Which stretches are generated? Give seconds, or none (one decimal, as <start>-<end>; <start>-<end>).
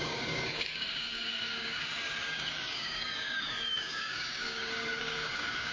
0.0-5.7